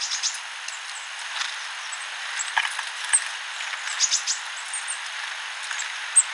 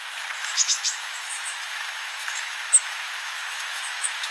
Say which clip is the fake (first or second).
second